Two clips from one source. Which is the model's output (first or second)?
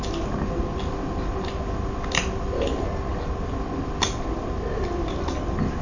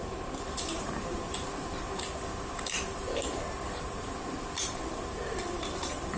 second